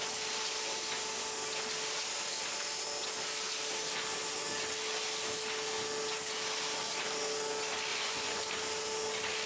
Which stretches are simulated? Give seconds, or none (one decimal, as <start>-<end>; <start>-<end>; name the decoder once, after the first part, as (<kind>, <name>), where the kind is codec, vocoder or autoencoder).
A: 7.9-8.4 (vocoder, Vocos)